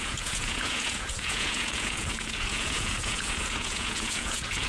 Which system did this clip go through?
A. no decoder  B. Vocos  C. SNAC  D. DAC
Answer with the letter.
B